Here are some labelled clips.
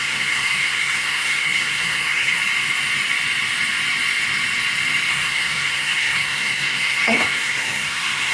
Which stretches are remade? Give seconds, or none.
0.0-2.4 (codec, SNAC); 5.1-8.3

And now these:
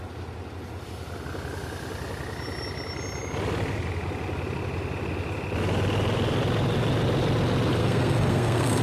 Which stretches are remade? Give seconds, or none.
7.8-8.8 (codec, SNAC)

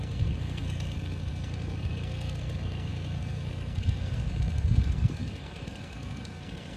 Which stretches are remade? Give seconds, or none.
0.0-6.8 (codec, SNAC)

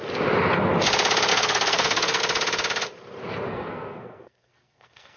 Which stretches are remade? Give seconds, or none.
1.3-2.2 (codec, SNAC); 3.5-5.2